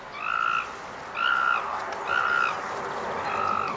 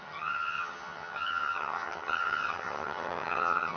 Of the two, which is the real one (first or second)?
first